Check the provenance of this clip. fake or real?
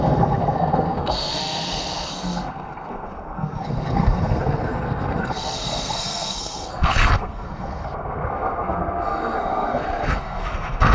fake